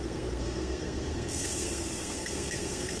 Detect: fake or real fake